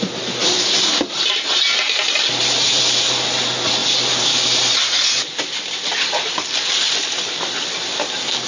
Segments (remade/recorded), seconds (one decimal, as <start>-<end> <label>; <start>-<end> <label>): 0.0-8.5 recorded